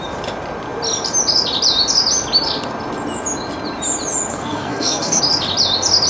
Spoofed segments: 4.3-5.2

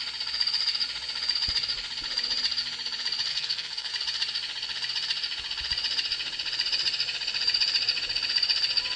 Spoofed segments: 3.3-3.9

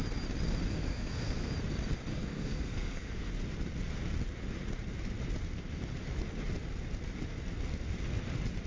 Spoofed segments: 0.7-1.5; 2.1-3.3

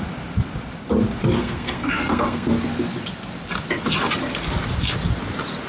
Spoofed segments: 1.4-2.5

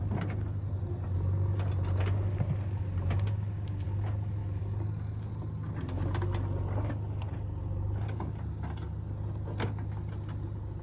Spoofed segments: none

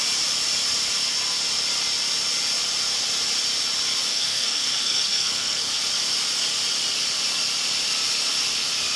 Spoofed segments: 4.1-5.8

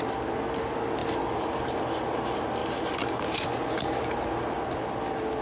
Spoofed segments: none

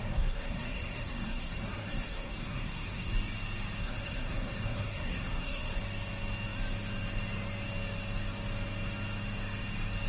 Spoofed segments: 0.0-3.1; 3.8-5.8